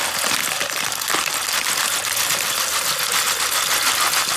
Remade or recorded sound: recorded